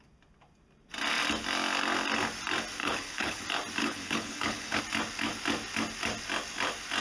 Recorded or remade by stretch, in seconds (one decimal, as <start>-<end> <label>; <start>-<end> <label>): 0.0-2.8 recorded; 2.8-3.4 remade; 3.4-3.8 recorded; 3.8-4.8 remade; 4.8-7.0 recorded